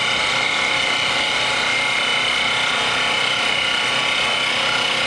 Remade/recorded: recorded